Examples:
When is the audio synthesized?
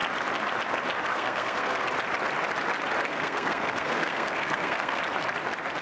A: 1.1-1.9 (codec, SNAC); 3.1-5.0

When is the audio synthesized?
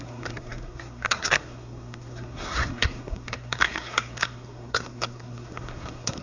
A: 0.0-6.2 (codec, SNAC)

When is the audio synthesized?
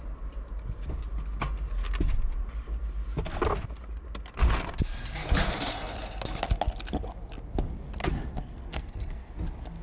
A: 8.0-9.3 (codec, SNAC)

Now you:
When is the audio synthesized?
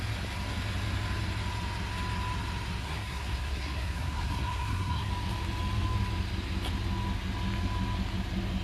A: 2.8-5.1 (codec, SNAC)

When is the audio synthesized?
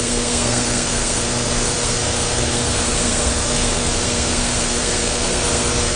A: 0.0-6.0 (codec, SNAC)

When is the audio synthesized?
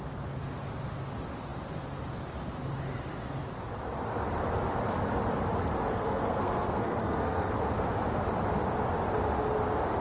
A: 5.9-7.6 (codec, SNAC)